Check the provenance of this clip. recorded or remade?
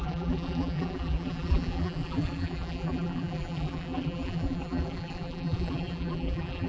remade